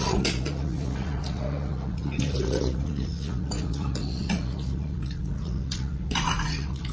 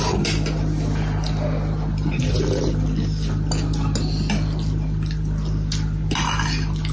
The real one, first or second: second